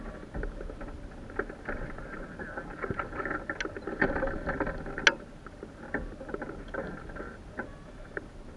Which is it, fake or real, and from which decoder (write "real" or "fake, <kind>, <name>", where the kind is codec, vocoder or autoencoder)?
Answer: real